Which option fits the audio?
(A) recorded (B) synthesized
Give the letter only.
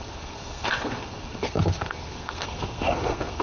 B